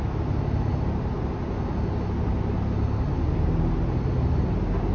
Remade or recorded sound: recorded